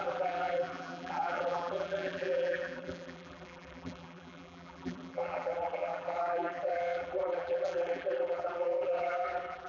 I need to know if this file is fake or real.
fake